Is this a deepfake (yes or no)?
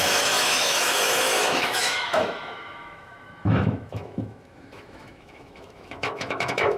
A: yes